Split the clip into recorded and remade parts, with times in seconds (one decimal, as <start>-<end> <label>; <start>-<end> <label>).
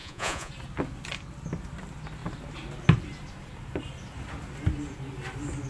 0.0-0.5 remade; 0.5-5.7 recorded